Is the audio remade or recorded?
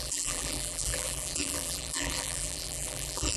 remade